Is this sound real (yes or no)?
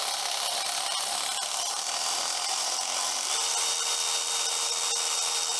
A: yes